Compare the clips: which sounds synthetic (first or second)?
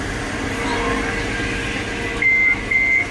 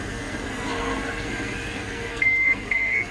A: second